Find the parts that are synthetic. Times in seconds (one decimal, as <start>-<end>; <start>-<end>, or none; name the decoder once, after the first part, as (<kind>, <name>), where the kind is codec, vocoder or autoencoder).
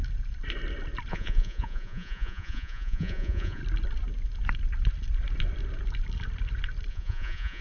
1.1-3.6 (vocoder, Vocos); 6.9-7.6